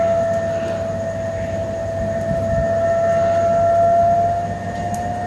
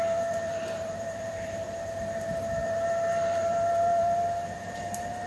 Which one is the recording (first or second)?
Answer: first